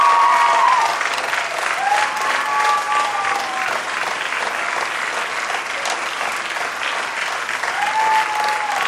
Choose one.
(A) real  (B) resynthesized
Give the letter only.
A